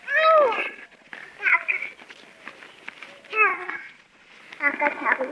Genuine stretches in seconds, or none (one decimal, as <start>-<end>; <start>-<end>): 0.0-0.6; 1.1-3.5; 4.4-5.3